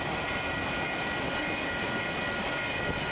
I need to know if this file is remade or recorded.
recorded